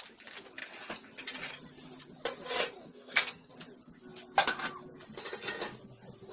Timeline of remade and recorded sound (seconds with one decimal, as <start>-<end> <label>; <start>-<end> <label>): 0.0-2.8 recorded; 2.8-3.5 remade; 3.5-6.3 recorded

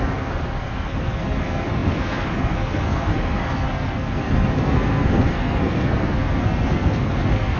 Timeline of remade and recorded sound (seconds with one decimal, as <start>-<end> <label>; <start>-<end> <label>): 0.0-7.6 remade

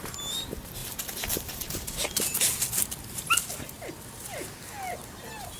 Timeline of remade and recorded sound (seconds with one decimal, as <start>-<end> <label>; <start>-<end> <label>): 0.0-5.6 recorded